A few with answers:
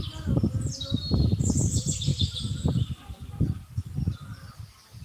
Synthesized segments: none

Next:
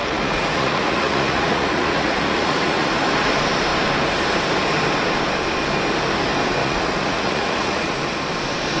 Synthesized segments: 0.0-2.9 (vocoder, Vocos); 6.6-8.0

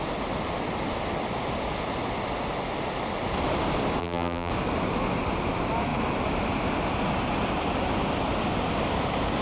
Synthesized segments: 4.0-4.5 (vocoder, BigVGAN v2)